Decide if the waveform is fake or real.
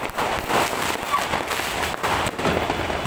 real